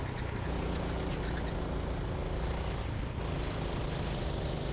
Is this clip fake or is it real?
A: real